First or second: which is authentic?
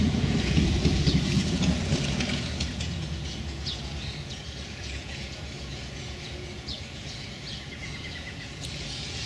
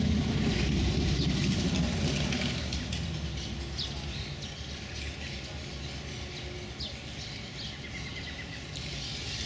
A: second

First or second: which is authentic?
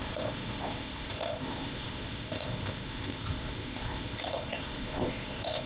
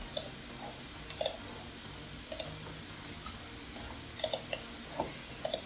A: second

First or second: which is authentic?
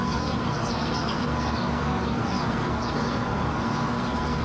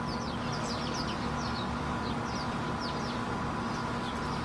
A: second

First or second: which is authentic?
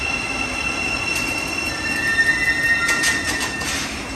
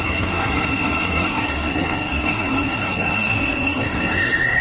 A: first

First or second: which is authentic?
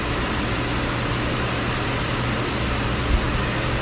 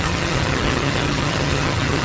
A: first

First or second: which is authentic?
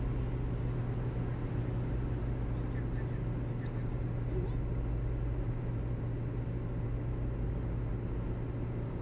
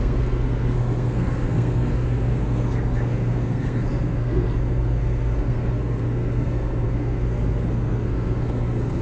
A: first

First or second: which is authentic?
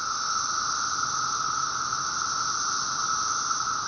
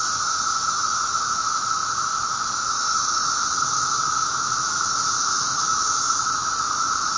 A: first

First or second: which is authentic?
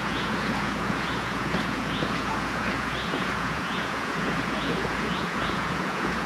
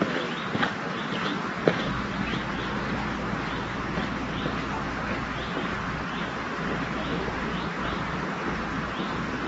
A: second